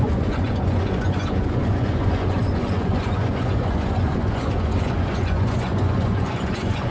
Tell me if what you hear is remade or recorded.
remade